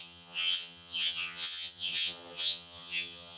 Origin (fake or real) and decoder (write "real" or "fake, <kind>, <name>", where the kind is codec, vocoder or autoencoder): fake, vocoder, HiFi-GAN